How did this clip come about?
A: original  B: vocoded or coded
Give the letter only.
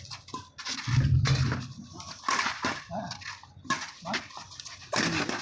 A